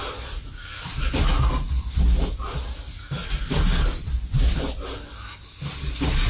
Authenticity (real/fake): real